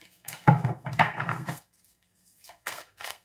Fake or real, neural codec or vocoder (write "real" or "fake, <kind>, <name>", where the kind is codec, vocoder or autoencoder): fake, codec, SNAC